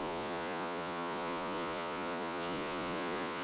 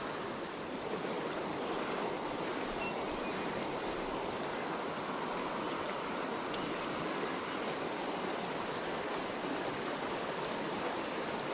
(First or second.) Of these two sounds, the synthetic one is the first